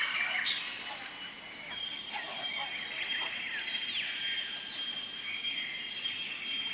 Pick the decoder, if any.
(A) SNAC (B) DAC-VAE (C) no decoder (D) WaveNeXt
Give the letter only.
C